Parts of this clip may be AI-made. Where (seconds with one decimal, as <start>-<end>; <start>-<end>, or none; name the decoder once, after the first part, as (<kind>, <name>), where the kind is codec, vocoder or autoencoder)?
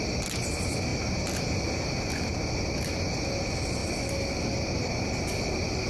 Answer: none